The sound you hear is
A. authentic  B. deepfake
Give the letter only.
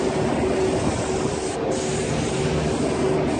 A